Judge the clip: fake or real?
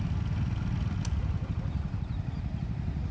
real